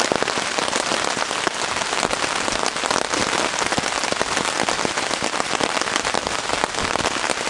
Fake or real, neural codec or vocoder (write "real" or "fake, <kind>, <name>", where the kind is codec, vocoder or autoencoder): real